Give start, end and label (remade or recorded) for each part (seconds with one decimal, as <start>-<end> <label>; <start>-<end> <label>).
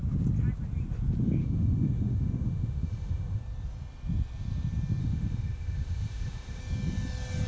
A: 0.0-1.4 recorded; 1.4-3.4 remade; 3.4-5.0 recorded; 5.0-6.6 remade; 6.6-7.5 recorded